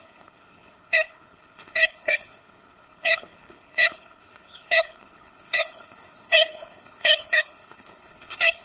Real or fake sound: fake